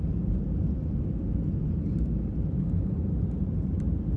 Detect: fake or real fake